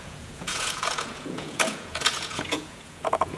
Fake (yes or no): yes